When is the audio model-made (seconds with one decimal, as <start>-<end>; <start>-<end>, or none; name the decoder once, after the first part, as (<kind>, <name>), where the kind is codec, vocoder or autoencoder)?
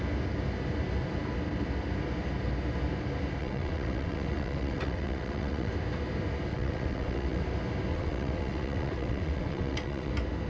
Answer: 3.4-5.7 (vocoder, WaveNeXt); 6.5-7.4; 7.9-10.1